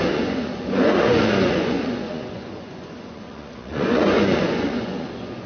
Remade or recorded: remade